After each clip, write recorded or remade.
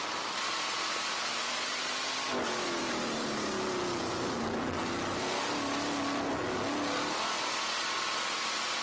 recorded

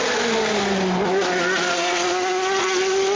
recorded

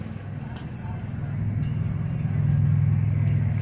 recorded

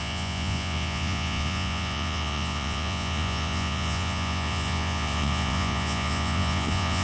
remade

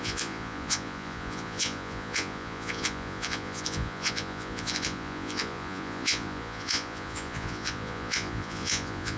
remade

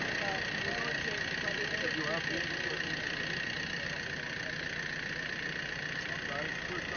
recorded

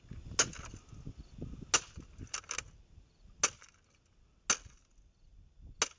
recorded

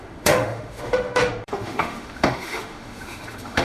remade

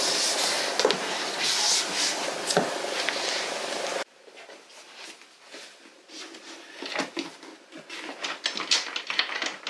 recorded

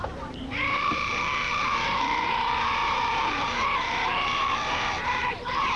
remade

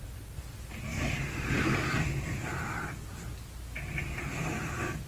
recorded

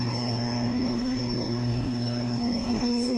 remade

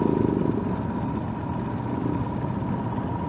recorded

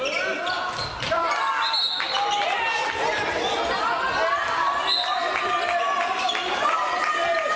recorded